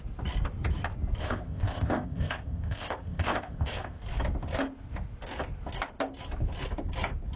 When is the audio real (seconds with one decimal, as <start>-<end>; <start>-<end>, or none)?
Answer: 0.0-1.2; 4.0-7.4